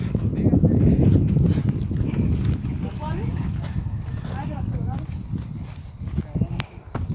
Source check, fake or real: real